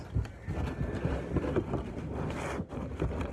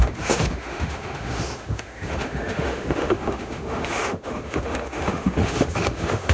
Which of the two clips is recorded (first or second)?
first